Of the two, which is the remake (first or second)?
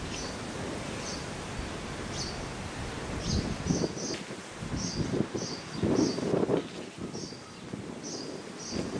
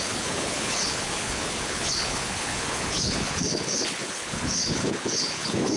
second